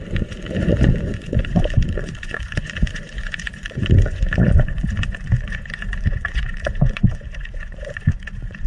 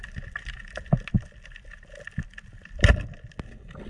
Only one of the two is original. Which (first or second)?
second